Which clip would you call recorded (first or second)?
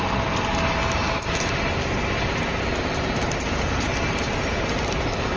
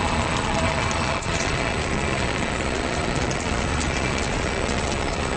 first